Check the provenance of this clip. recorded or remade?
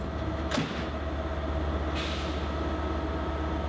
recorded